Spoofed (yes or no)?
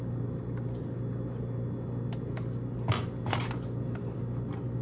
no